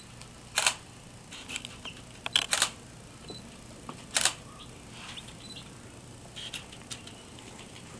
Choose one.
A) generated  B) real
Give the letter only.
B